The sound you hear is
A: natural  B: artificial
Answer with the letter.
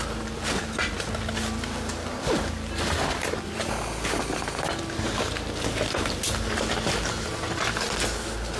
A